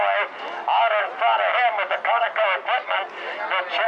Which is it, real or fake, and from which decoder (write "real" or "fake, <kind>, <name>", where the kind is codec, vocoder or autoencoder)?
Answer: real